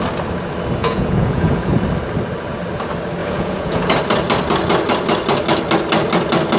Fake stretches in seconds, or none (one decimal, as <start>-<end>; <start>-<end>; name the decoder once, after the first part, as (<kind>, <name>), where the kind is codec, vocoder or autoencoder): 0.8-1.7 (vocoder, Vocos); 3.2-3.9